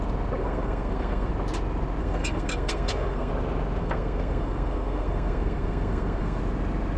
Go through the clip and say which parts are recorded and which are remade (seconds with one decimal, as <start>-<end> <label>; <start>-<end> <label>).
0.0-0.4 recorded; 0.4-1.3 remade; 1.3-2.0 recorded; 2.0-3.3 remade; 3.3-3.8 recorded; 3.8-6.4 remade; 6.4-7.0 recorded

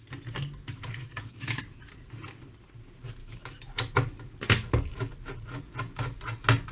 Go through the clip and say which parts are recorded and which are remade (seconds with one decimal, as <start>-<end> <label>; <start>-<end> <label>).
0.0-1.0 recorded; 1.0-1.6 remade; 1.6-3.2 recorded; 3.2-3.7 remade; 3.7-6.7 recorded